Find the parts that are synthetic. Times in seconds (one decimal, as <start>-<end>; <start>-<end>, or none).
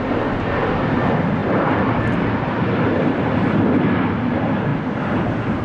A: 1.4-3.3; 4.7-5.6